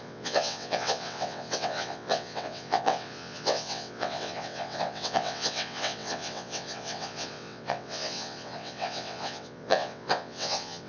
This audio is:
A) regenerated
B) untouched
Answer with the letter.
A